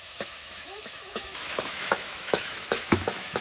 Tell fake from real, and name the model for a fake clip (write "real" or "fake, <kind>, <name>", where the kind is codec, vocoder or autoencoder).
fake, autoencoder, DAC-VAE